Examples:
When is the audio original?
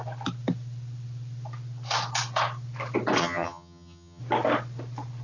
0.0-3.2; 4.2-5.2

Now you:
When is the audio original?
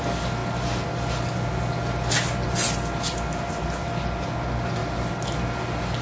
0.0-6.0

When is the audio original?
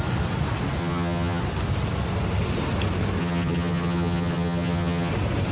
0.0-0.8; 1.4-3.2; 5.1-5.5